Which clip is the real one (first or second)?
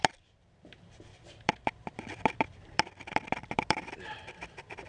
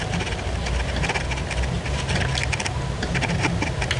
second